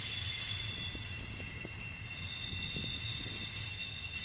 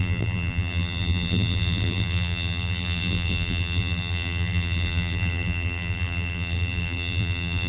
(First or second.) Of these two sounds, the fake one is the second